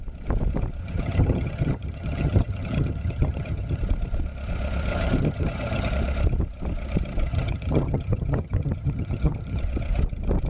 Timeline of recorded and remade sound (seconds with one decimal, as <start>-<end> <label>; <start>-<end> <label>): 0.0-0.8 recorded; 0.8-3.8 remade; 3.8-4.9 recorded; 4.9-5.9 remade; 5.9-7.3 recorded; 7.3-9.6 remade; 9.6-10.5 recorded